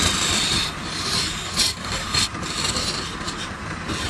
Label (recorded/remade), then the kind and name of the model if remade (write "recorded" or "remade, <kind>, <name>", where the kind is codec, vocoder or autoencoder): remade, vocoder, BigVGAN v2